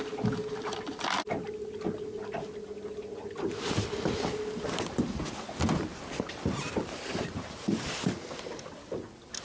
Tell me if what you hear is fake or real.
real